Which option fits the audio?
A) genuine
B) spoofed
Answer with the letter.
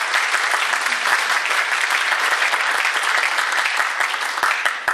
B